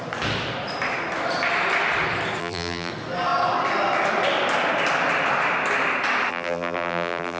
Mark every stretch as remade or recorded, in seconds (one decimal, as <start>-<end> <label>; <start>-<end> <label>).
0.0-2.4 recorded; 2.4-2.9 remade; 2.9-6.3 recorded; 6.3-7.4 remade